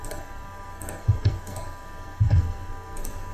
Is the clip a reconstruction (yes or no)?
yes